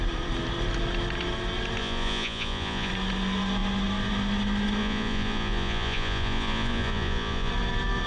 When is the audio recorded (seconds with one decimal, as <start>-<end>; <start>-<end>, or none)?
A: 0.0-1.8; 2.9-4.8; 7.5-8.1